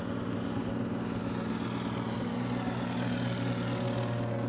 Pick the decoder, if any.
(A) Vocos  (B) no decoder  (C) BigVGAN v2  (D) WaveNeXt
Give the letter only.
B